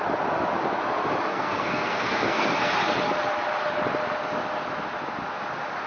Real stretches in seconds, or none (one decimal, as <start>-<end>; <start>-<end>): 0.0-1.3; 2.7-5.9